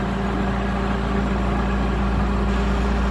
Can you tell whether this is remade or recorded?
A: recorded